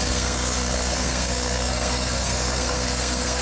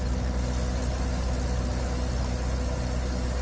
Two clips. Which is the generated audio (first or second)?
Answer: first